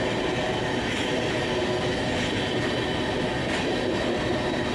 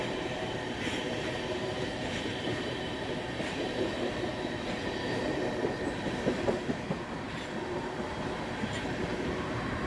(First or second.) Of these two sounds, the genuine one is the first